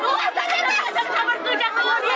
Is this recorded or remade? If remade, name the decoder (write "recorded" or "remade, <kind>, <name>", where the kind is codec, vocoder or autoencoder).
recorded